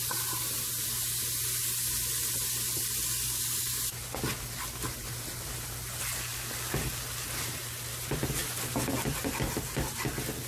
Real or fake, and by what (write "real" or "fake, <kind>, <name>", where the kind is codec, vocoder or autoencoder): real